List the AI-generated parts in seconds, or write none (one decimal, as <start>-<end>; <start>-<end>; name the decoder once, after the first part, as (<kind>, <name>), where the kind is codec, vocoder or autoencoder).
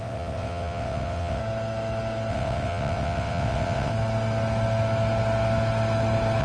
0.0-1.4 (vocoder, WaveNeXt); 2.3-3.9